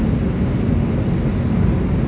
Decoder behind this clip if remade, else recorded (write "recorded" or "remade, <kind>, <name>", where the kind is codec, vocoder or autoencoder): recorded